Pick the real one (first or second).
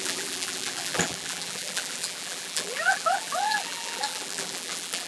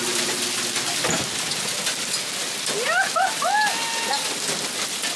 second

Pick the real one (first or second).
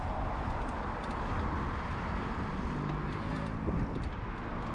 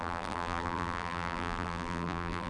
first